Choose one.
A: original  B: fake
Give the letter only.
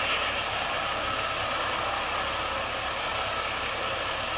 A